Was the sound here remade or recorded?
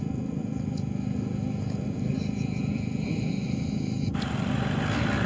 remade